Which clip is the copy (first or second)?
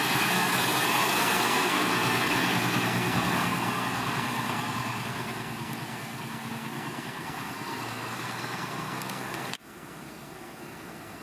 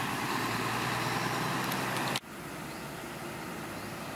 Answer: first